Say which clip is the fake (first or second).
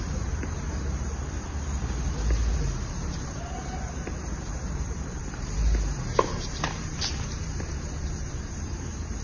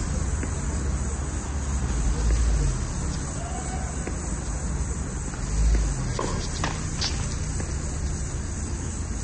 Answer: first